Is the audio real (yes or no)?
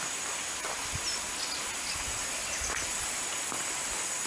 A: yes